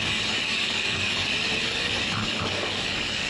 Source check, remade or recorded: remade